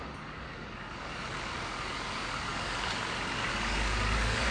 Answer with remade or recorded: remade